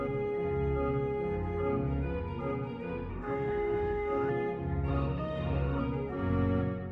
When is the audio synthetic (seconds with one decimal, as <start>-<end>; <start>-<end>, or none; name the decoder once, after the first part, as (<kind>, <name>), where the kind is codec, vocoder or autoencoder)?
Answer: 3.1-4.3 (autoencoder, DAC-VAE); 4.9-5.8

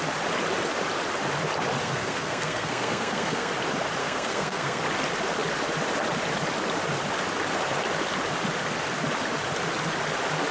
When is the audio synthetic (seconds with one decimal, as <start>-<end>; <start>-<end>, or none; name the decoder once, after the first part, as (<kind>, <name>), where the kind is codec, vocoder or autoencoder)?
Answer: 1.8-3.5 (codec, SNAC); 4.0-4.8

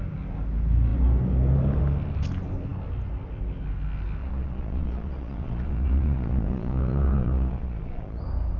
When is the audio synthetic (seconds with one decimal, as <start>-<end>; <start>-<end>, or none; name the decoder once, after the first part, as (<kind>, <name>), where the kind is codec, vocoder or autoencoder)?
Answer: 4.2-8.2 (vocoder, Vocos)

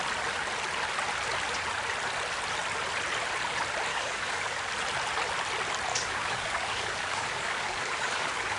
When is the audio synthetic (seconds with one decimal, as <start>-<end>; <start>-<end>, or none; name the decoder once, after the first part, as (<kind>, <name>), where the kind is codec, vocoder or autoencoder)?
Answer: 3.9-4.7 (codec, DAC); 5.9-8.6

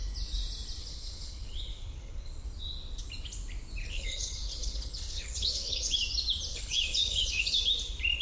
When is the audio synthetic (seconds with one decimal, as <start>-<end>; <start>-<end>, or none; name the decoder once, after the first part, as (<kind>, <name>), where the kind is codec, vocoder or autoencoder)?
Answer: 0.8-2.3 (codec, HILCodec); 3.8-6.0; 6.5-7.6